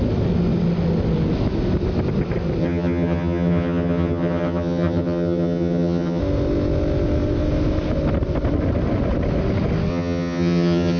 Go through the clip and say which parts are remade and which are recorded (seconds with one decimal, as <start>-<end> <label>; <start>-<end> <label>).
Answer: 0.0-2.6 recorded; 2.6-6.2 remade; 6.2-9.9 recorded; 9.9-11.0 remade